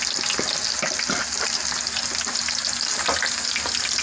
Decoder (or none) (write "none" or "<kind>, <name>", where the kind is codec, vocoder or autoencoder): none